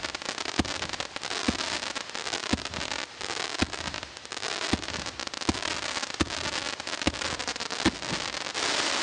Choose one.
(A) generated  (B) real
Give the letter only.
B